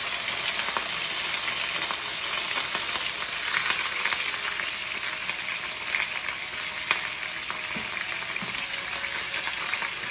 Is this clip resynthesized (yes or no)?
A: no